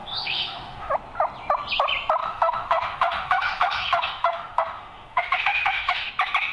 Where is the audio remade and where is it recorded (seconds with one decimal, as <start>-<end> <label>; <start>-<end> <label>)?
0.0-0.9 remade; 0.9-2.2 recorded; 2.2-6.1 remade; 6.1-6.5 recorded